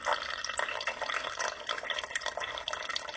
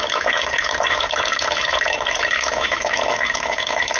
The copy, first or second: second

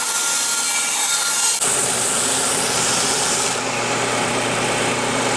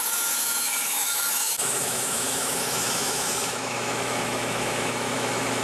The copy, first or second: second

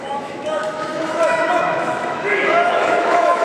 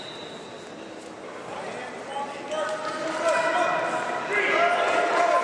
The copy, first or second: first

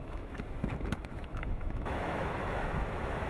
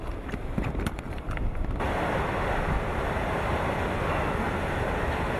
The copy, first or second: first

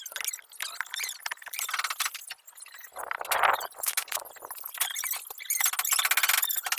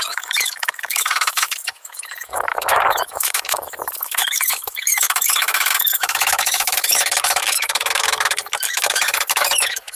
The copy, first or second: second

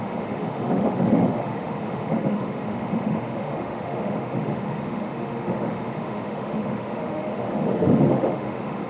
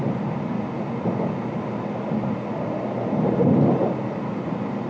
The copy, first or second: first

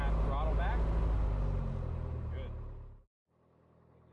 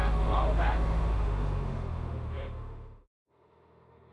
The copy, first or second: second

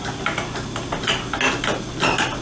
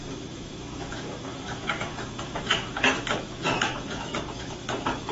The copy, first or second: second